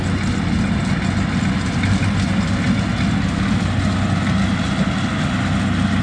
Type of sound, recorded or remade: recorded